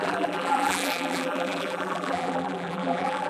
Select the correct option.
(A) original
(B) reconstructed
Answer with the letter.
B